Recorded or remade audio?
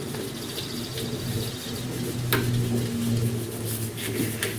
recorded